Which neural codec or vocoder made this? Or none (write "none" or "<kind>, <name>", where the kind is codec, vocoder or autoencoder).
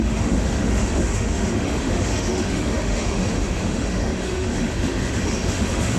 autoencoder, DAC-VAE